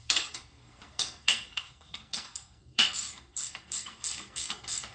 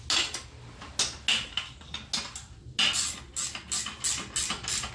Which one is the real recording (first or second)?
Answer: second